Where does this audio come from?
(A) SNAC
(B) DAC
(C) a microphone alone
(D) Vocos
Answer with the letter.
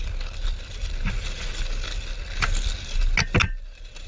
C